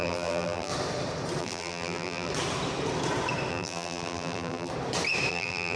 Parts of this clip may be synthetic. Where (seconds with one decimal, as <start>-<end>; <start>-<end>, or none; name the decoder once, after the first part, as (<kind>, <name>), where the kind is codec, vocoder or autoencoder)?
0.0-0.7 (vocoder, BigVGAN v2); 1.4-2.3; 3.5-4.7; 5.3-5.8